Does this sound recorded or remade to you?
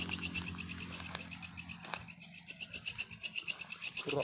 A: recorded